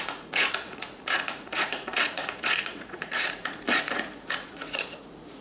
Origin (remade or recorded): remade